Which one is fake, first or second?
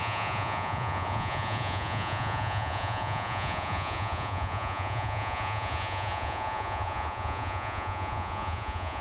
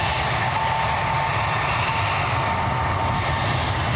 first